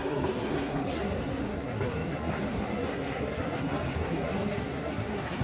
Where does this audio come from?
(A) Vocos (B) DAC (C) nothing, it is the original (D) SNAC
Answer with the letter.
D